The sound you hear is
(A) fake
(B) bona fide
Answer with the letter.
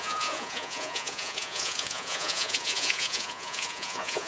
A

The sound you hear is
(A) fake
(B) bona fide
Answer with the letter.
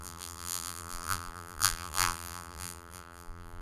A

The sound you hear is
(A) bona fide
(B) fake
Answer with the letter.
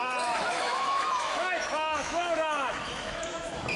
B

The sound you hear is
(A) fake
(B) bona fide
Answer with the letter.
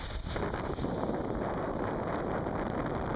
B